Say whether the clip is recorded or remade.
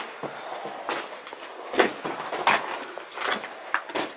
recorded